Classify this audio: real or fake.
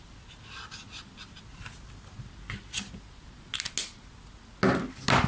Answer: real